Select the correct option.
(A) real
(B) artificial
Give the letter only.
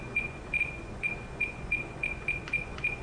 B